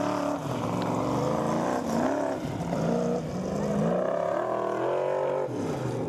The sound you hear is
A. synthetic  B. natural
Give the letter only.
B